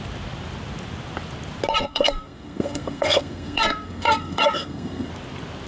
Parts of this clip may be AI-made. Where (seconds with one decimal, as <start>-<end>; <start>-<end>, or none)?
1.8-5.1